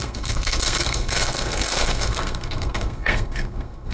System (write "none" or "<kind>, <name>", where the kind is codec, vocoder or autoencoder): codec, SNAC